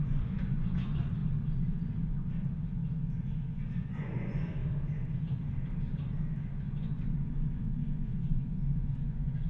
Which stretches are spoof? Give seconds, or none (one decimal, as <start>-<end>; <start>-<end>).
0.0-1.2; 3.6-4.6; 6.5-9.5